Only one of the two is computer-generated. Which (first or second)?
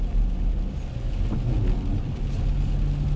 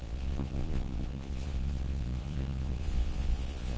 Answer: second